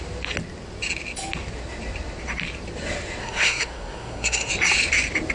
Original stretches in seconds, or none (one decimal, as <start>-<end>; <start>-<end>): 0.0-3.2; 4.5-5.3